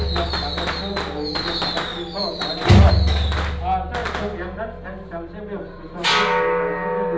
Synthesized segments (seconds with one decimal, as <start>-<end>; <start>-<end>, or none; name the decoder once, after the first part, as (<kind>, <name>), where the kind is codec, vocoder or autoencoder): none